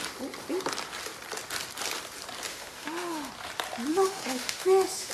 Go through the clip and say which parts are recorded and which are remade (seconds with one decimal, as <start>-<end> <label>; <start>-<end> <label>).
0.0-2.5 recorded; 2.5-3.3 remade; 3.3-3.9 recorded; 3.9-5.1 remade